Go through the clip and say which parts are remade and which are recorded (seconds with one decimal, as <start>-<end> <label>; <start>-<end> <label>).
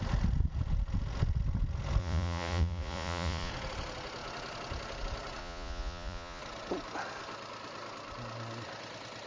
0.0-2.0 recorded; 2.0-3.5 remade; 3.5-5.4 recorded; 5.4-6.4 remade; 6.4-9.3 recorded